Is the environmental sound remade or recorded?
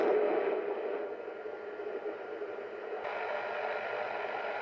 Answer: recorded